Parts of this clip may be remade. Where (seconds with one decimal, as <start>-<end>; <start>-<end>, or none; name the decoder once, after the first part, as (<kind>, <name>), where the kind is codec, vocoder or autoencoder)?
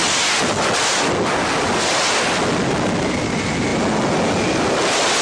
none